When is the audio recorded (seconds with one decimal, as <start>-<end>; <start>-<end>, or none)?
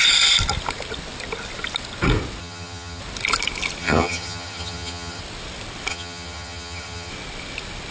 0.0-2.4; 3.0-3.8; 5.2-5.9; 7.1-7.9